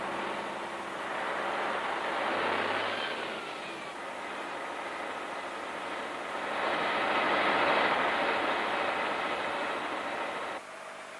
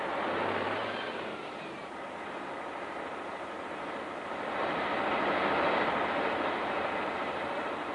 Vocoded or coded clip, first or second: second